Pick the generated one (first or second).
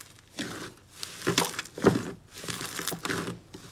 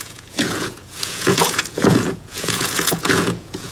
second